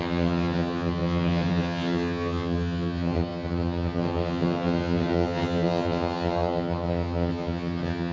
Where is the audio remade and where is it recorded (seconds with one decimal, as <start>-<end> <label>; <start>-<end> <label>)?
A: 0.0-8.1 remade